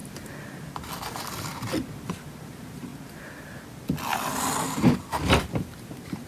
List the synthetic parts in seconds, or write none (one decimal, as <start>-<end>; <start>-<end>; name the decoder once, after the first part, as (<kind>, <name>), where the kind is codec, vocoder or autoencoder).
2.1-2.9 (vocoder, BigVGAN v2); 5.4-6.3